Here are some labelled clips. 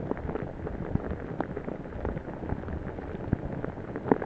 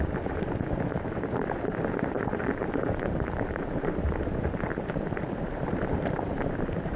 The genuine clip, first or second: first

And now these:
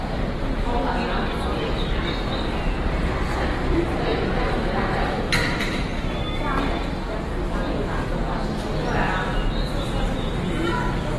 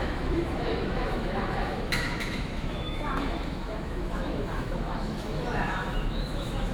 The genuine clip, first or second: first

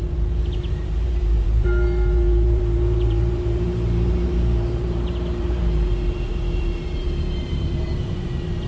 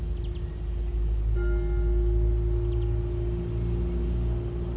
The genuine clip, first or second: second